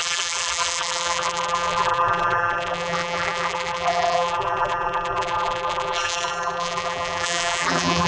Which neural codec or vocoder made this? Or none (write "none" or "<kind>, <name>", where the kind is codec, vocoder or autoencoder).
vocoder, BigVGAN v2